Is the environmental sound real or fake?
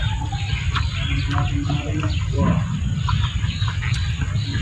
real